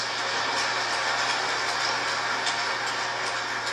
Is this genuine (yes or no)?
yes